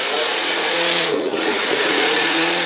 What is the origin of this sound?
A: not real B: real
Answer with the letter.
A